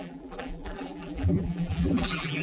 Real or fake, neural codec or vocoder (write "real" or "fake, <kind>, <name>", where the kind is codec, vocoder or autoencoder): fake, vocoder, BigVGAN v2